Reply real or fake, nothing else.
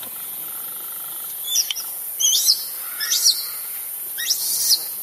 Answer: fake